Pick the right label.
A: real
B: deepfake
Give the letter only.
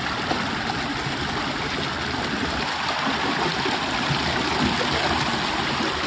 A